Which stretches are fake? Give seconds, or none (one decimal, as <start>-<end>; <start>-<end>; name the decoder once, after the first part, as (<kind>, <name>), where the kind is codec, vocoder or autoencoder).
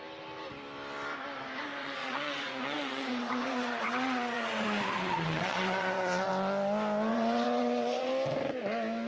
1.8-6.3 (vocoder, WaveNeXt); 7.1-8.1